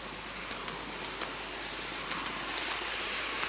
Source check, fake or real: real